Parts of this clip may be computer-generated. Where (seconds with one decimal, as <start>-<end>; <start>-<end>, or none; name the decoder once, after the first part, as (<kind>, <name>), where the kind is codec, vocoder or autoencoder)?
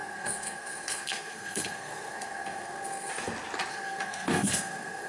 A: 0.0-3.1 (codec, SNAC); 3.7-5.1